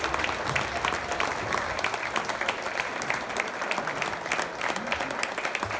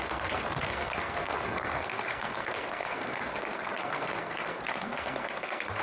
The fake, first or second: second